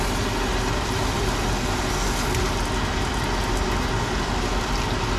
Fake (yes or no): no